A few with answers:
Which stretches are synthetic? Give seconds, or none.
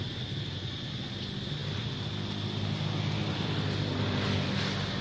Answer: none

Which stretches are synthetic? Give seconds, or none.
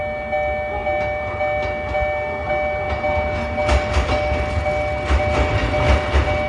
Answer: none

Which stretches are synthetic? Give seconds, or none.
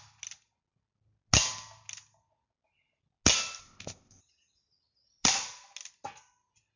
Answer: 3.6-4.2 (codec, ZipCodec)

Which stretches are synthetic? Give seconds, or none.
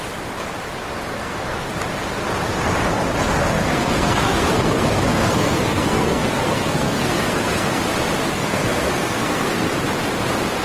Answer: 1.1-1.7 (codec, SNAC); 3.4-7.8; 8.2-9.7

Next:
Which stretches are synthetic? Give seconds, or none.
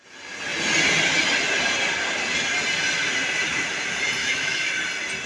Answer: 4.2-4.7 (autoencoder, DAC-VAE)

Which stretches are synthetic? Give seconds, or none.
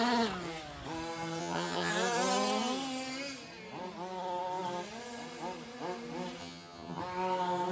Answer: 1.4-1.9 (vocoder, HiFi-GAN); 6.4-7.0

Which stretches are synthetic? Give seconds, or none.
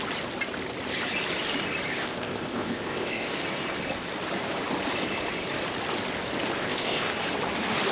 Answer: 1.9-3.3 (codec, ZipCodec); 6.6-7.1